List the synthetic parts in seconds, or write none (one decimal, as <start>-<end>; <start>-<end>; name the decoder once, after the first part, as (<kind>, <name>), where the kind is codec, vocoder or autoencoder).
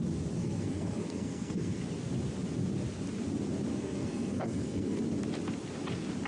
0.4-1.8 (codec, SNAC); 3.7-5.0